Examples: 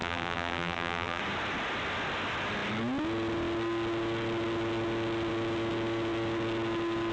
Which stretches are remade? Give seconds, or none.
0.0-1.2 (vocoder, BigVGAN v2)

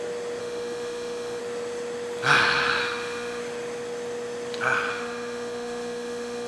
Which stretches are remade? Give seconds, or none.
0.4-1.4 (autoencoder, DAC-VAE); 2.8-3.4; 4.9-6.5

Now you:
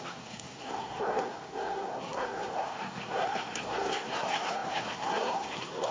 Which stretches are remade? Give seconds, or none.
0.0-5.9 (codec, SNAC)

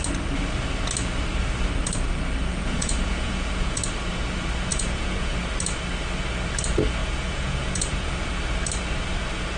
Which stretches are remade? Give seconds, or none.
2.5-3.8 (vocoder, Vocos); 4.7-5.4; 7.0-8.1

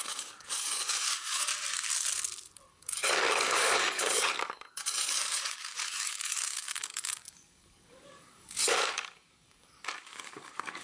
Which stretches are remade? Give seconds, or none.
0.0-1.5 (codec, DAC); 2.7-10.8